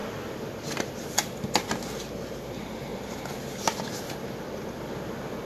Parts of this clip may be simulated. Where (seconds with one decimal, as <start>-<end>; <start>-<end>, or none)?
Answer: none

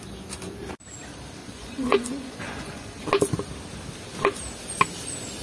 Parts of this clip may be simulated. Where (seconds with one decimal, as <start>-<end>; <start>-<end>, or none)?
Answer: 1.4-3.0

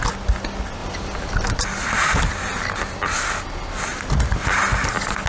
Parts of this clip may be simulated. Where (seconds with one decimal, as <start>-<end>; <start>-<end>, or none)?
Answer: none

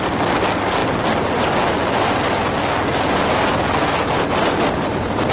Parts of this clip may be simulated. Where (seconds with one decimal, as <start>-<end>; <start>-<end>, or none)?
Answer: none